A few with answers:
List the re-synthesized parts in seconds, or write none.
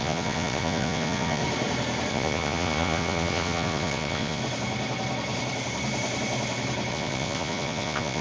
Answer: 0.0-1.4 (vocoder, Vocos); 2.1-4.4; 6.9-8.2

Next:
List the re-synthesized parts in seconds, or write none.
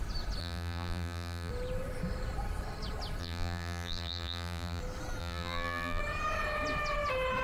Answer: 0.4-1.5 (vocoder, BigVGAN v2); 3.2-4.8; 5.2-6.0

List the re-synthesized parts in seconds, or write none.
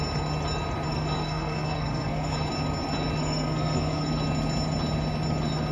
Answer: 0.9-2.5 (codec, SNAC); 3.2-4.1